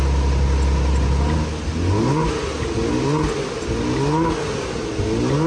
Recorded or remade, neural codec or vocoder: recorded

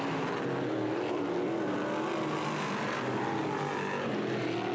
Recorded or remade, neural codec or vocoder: recorded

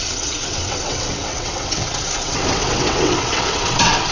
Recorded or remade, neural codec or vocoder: remade, vocoder, WaveNeXt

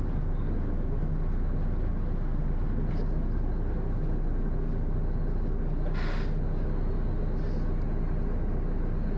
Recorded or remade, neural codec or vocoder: recorded